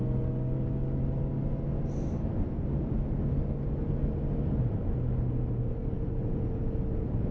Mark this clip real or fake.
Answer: real